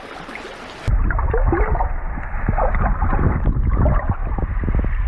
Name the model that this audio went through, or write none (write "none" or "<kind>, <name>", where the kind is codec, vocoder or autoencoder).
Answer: none